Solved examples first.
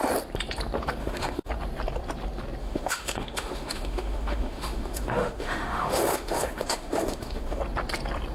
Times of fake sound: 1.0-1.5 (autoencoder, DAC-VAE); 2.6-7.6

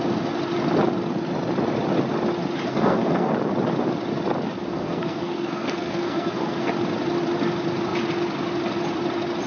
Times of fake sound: 2.7-3.3 (codec, SNAC); 4.6-6.7

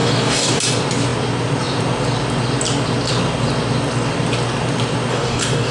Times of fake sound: 0.0-0.6 (codec, DAC); 5.1-5.7